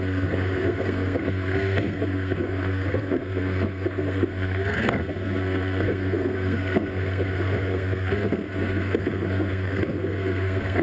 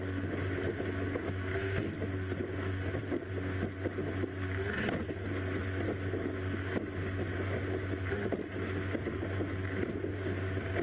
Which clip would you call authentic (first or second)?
second